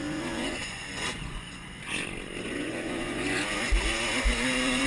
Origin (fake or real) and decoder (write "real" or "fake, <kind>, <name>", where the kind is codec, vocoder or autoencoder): fake, vocoder, Vocos